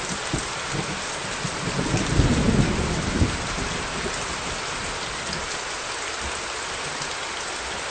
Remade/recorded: recorded